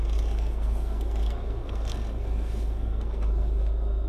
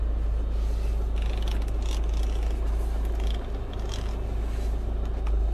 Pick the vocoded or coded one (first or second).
first